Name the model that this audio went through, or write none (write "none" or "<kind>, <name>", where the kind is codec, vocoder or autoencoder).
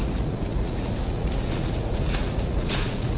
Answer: vocoder, Vocos